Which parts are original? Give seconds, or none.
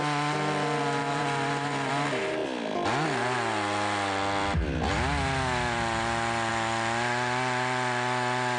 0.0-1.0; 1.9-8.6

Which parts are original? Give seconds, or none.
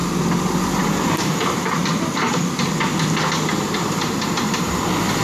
0.0-0.6; 1.8-3.5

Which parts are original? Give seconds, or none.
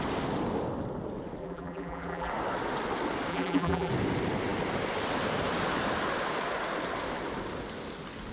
0.0-1.4; 2.3-3.3; 3.9-8.3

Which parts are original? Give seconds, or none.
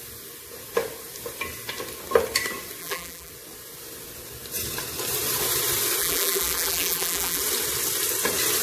0.0-2.8; 3.3-6.0; 7.4-8.6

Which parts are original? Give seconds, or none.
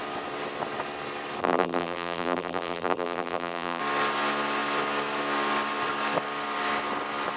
0.0-1.4; 3.8-7.4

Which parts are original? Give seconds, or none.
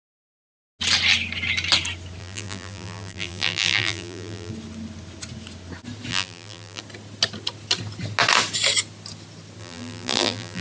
0.0-2.2; 4.5-6.1; 6.8-9.6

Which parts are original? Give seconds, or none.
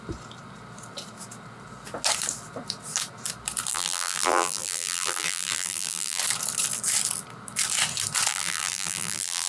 0.0-3.7; 6.2-8.3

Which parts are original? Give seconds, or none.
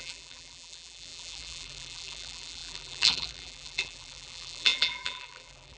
none